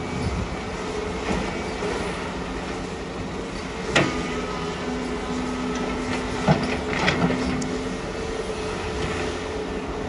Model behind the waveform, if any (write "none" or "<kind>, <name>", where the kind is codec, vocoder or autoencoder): none